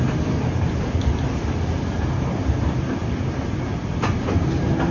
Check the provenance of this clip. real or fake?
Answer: real